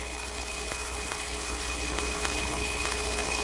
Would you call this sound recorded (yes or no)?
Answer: no